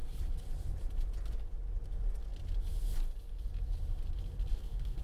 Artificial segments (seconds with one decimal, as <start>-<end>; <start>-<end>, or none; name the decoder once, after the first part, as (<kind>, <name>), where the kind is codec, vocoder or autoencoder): 4.5-5.0 (codec, SNAC)